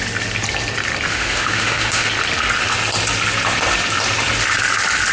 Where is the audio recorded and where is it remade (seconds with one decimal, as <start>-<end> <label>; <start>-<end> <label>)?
0.0-1.1 recorded; 1.1-2.1 remade; 2.1-5.1 recorded